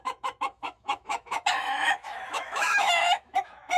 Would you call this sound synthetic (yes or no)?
yes